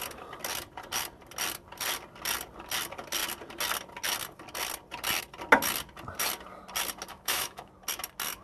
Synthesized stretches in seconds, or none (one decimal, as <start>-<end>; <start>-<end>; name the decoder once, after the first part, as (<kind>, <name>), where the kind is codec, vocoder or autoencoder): 7.1-7.7 (autoencoder, DAC-VAE)